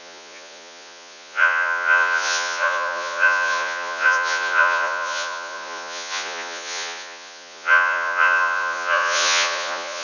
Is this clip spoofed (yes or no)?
yes